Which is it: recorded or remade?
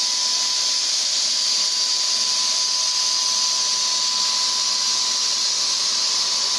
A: recorded